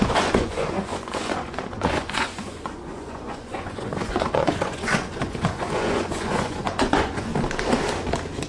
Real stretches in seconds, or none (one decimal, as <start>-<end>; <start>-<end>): 7.3-8.5